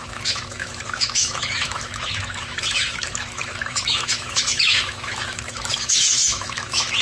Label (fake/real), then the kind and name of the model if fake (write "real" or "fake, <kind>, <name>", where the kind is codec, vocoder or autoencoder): fake, autoencoder, DAC-VAE